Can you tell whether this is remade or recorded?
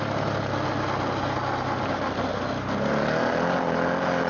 recorded